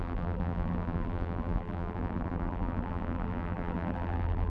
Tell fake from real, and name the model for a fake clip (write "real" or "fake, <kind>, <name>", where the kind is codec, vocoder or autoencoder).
fake, vocoder, BigVGAN v2